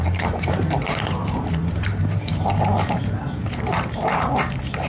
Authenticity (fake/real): fake